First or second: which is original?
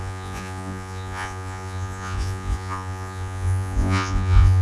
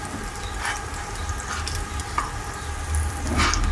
second